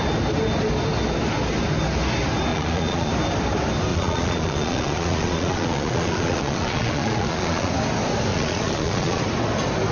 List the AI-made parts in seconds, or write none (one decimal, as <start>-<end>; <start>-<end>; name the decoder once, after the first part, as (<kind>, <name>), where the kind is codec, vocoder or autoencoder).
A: 2.5-3.1 (vocoder, Vocos); 3.9-7.7; 8.3-9.2